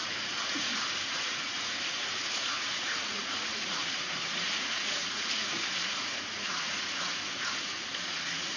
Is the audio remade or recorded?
remade